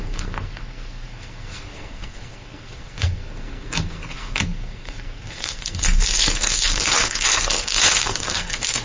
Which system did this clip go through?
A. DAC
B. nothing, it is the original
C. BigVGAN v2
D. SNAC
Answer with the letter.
D